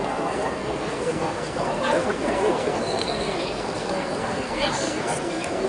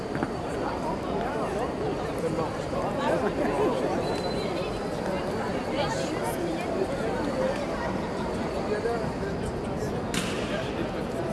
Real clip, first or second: second